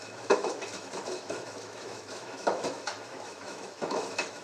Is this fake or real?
fake